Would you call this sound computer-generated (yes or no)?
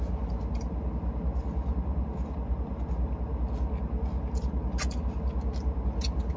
no